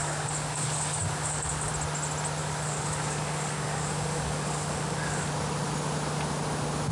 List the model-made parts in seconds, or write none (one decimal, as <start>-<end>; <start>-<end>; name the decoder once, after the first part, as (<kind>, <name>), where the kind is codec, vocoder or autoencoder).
0.0-1.7 (codec, DAC); 2.4-5.3